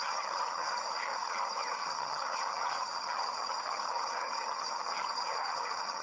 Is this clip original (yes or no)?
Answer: no